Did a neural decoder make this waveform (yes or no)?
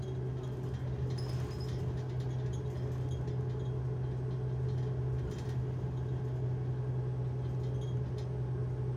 no